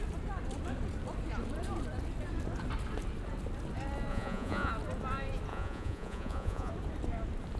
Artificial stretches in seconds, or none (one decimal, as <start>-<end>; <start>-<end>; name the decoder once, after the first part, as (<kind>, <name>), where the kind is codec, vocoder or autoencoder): 4.1-4.7 (vocoder, Vocos); 5.5-6.7